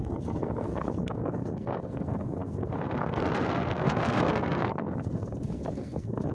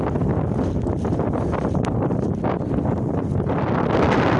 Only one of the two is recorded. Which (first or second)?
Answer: second